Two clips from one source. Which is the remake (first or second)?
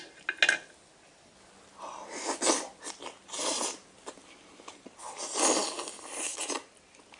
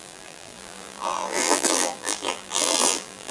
second